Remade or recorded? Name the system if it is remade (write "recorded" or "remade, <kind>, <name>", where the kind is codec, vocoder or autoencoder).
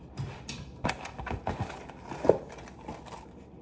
recorded